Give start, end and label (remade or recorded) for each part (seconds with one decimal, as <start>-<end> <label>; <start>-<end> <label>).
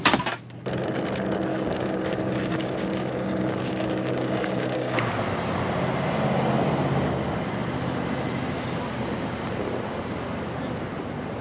0.0-1.5 recorded; 1.5-5.1 remade; 5.1-11.4 recorded